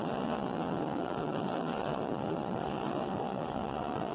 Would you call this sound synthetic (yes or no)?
yes